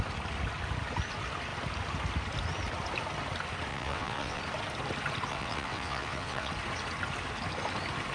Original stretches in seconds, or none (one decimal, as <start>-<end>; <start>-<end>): 0.0-3.7; 4.4-5.3; 6.5-8.1